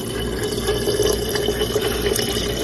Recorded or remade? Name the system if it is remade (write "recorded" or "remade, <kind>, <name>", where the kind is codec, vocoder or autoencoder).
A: recorded